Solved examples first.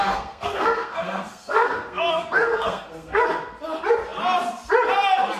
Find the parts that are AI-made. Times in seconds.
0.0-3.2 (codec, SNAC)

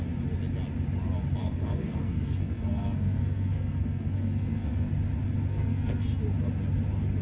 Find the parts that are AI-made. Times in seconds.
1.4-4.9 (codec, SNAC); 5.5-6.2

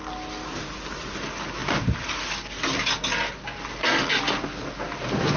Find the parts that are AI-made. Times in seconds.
none

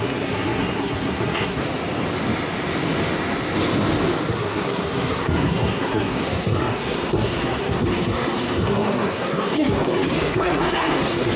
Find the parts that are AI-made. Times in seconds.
0.0-1.6 (codec, SNAC); 4.3-11.4

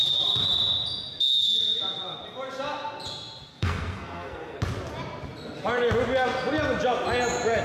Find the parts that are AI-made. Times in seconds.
3.5-4.6 (codec, SNAC)